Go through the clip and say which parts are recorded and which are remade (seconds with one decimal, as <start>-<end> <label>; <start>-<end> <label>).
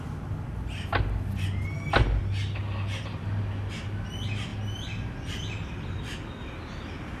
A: 0.0-7.2 recorded